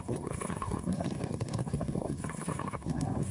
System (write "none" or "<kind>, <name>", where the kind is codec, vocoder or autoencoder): codec, SNAC